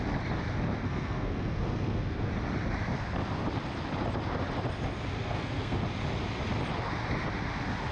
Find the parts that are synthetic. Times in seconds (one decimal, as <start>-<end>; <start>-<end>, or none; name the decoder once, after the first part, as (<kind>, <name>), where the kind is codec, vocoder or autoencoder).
0.8-2.3 (codec, SNAC); 5.1-5.8